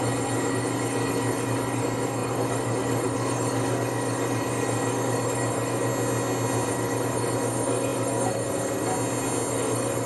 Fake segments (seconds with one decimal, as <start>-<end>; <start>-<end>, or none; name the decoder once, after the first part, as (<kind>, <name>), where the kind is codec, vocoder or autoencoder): 0.0-5.9 (codec, DAC); 6.7-8.9; 9.5-10.1